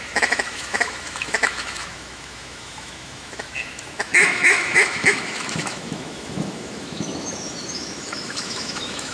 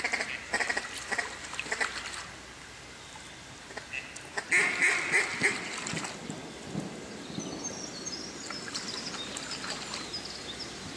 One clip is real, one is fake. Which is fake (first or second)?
first